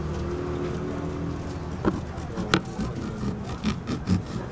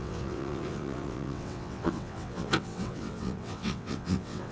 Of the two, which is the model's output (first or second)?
second